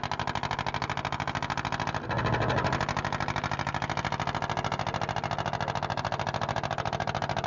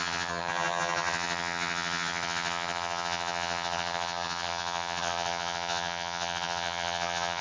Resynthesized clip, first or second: second